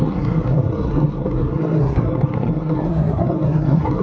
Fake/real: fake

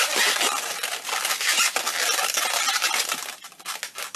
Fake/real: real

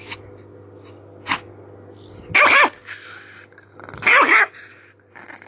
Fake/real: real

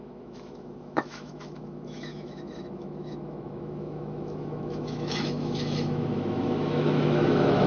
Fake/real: fake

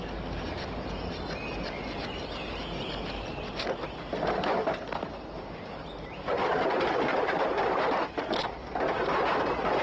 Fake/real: real